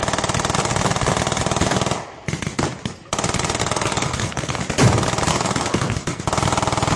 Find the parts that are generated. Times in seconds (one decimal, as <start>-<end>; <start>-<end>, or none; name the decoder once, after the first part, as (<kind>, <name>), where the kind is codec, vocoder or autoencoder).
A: 3.6-4.6 (codec, SNAC); 5.3-6.2